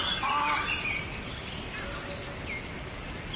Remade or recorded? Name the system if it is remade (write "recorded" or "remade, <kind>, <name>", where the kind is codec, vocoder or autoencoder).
recorded